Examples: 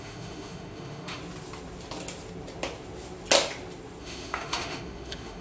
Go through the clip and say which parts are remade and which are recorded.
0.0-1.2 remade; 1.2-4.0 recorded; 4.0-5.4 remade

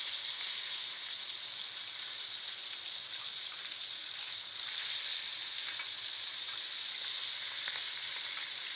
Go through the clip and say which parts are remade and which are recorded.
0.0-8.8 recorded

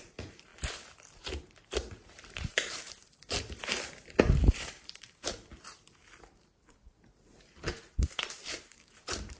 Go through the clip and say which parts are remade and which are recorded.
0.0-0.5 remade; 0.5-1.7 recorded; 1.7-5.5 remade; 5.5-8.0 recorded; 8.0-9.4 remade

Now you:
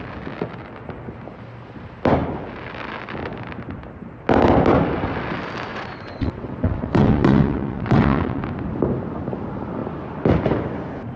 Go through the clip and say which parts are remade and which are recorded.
0.0-5.7 recorded; 5.7-8.4 remade; 8.4-11.2 recorded

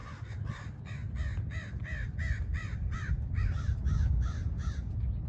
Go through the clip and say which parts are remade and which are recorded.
0.0-2.5 recorded; 2.5-3.8 remade; 3.8-5.3 recorded